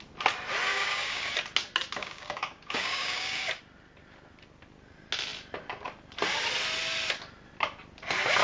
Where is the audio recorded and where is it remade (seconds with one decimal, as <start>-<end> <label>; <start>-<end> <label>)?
0.0-0.7 recorded; 0.7-1.3 remade; 1.3-2.0 recorded; 2.0-3.6 remade; 3.6-8.4 recorded